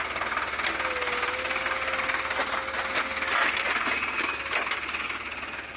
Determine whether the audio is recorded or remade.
recorded